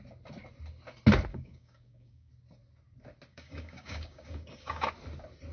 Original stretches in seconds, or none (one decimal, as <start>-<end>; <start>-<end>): 0.0-1.3; 2.3-3.3; 4.9-5.5